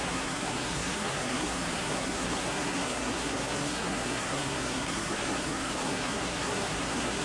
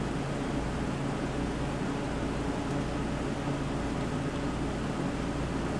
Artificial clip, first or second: first